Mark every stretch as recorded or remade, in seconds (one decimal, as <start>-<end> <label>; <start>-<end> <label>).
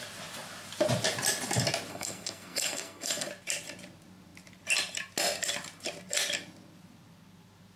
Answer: 0.0-1.9 recorded; 1.9-3.3 remade; 3.3-7.8 recorded